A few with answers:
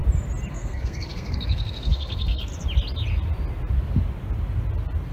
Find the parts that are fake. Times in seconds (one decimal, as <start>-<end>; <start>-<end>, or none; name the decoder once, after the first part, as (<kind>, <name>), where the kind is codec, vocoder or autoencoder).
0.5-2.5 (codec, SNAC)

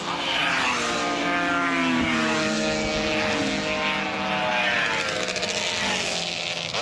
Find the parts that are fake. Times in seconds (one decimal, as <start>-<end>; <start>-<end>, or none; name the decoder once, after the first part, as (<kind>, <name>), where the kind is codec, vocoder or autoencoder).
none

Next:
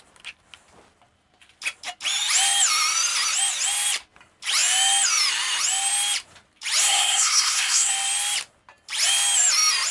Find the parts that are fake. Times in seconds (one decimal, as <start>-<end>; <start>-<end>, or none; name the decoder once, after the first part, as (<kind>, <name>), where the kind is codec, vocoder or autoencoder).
6.8-7.9 (codec, SNAC)

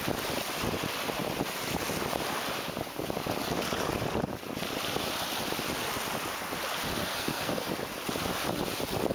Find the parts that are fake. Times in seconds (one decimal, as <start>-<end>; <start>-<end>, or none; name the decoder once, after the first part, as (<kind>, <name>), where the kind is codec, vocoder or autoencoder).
7.0-7.7 (codec, SNAC)

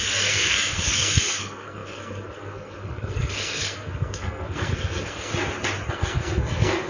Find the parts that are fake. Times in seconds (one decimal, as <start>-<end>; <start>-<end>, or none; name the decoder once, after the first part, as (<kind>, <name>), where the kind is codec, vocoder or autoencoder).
0.0-5.3 (codec, SNAC); 5.9-6.9

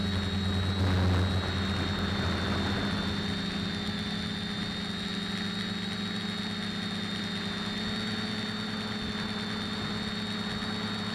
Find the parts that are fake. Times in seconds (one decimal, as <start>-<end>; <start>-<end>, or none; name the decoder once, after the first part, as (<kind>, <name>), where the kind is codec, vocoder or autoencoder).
none

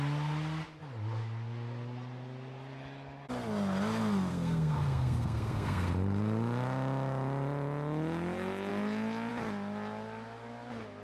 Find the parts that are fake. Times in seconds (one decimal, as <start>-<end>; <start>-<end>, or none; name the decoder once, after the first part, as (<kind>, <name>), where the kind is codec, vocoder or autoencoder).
4.3-5.9 (codec, SNAC)